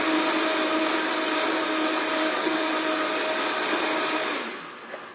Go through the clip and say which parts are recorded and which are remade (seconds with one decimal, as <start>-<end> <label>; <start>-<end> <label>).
0.0-2.2 recorded; 2.2-2.7 remade; 2.7-5.1 recorded